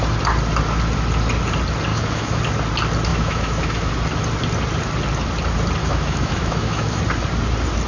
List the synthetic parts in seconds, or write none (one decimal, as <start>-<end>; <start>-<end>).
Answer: 1.9-2.4; 3.1-3.9; 5.8-7.0